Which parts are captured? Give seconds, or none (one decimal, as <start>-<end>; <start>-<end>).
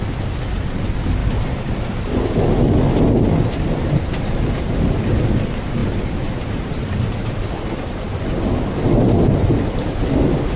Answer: 0.0-10.6